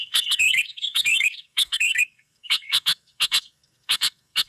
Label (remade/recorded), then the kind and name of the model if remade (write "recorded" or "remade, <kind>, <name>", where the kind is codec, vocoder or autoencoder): remade, codec, SNAC